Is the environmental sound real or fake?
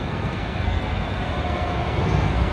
fake